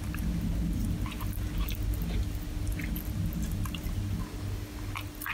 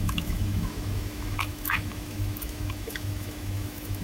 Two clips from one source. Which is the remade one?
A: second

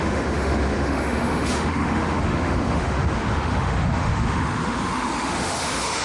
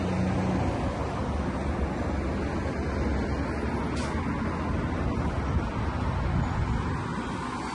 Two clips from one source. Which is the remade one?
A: first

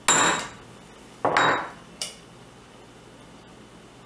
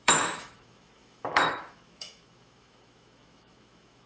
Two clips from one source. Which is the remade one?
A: second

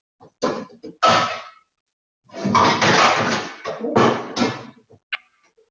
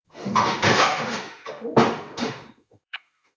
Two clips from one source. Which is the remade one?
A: second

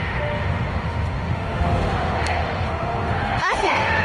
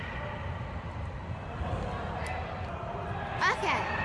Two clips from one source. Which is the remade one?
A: first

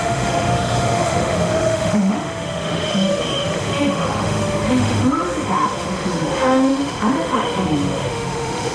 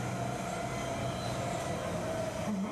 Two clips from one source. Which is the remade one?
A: first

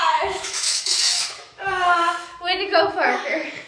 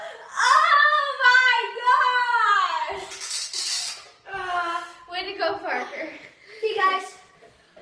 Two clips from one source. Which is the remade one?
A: first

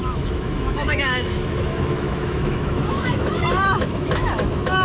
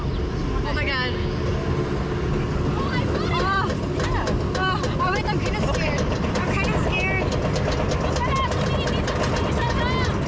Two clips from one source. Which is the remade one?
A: first